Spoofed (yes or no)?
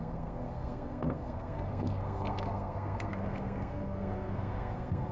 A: yes